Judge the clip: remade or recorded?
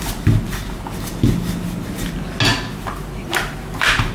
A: recorded